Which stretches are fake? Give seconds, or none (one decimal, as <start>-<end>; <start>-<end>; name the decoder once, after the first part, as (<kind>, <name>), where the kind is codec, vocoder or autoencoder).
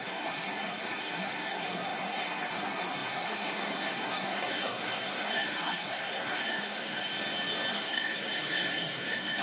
0.0-7.1 (codec, SNAC); 7.7-9.4